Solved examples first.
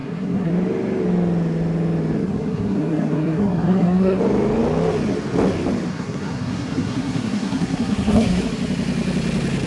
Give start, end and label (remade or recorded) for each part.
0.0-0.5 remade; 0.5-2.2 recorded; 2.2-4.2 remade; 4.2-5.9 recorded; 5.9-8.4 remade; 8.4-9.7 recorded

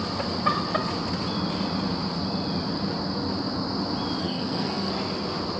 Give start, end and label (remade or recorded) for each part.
0.0-4.2 recorded; 4.2-4.9 remade; 4.9-5.6 recorded

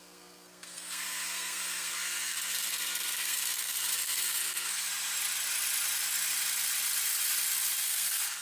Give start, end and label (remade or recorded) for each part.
0.0-4.9 remade; 4.9-7.8 recorded; 7.8-8.4 remade

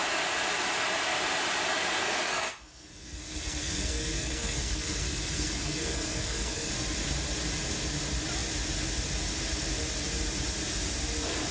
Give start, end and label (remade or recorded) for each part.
0.0-2.0 recorded; 2.0-6.7 remade; 6.7-11.5 recorded

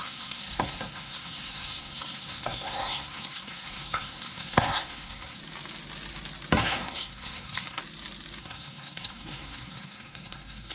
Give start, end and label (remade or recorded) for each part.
0.0-5.4 remade; 5.4-6.6 recorded; 6.6-7.8 remade; 7.8-8.4 recorded; 8.4-10.7 remade

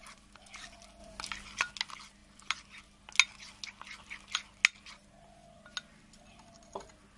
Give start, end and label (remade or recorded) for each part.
0.0-7.2 recorded

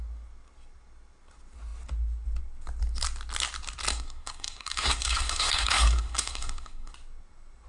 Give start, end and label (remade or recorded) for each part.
0.0-3.9 recorded; 3.9-6.9 remade; 6.9-7.7 recorded